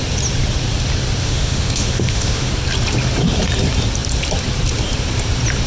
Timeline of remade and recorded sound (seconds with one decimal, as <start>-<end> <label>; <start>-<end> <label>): 0.0-1.2 recorded; 1.2-2.5 remade; 2.5-5.7 recorded